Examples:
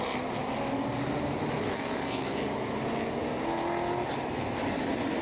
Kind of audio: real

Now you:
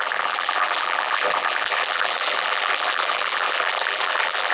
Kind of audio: fake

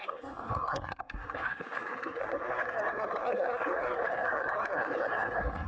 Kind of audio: fake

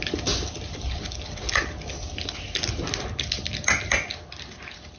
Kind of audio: real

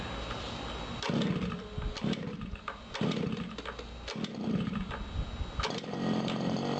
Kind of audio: real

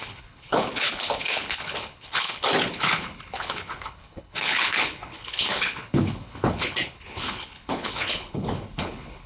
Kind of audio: fake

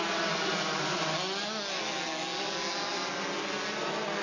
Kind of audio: real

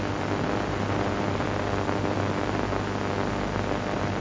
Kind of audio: real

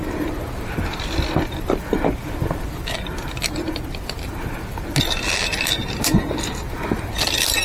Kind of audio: real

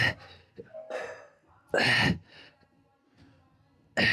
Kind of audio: real